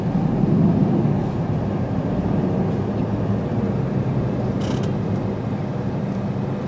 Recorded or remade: recorded